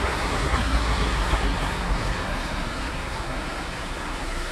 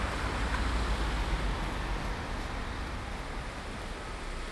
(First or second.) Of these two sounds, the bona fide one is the second